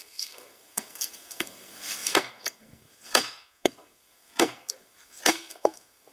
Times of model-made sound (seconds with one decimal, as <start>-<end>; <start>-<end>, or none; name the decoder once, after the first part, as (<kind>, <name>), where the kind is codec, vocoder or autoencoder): 0.0-6.1 (codec, SNAC)